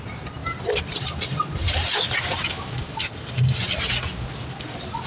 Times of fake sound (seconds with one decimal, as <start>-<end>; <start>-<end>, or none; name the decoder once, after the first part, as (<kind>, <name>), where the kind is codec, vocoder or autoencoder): none